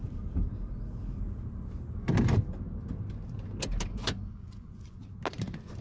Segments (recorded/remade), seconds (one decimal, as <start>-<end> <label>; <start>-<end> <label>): 0.0-3.9 recorded; 3.9-5.0 remade; 5.0-5.8 recorded